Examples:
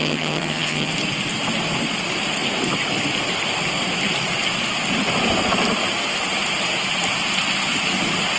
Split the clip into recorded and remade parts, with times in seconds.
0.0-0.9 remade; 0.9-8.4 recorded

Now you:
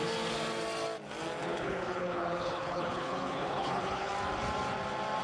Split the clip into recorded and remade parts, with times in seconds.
0.0-1.5 recorded; 1.5-4.1 remade; 4.1-5.2 recorded

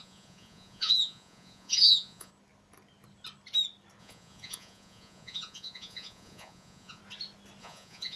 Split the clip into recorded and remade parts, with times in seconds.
0.0-2.3 remade; 2.3-4.0 recorded; 4.0-7.0 remade; 7.0-7.6 recorded; 7.6-8.2 remade

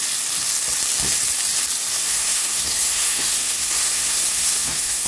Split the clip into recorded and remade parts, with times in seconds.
0.0-1.9 recorded; 1.9-5.1 remade